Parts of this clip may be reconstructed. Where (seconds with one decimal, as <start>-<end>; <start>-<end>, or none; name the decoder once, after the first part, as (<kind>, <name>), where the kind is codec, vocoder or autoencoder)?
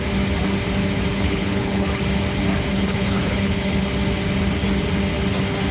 1.1-2.0 (codec, HILCodec); 2.7-3.8